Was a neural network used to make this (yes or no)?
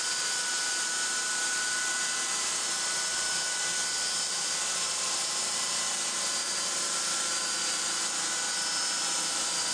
no